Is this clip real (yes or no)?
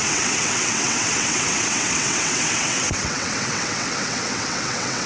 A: no